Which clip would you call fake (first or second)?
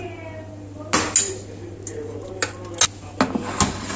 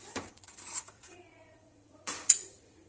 second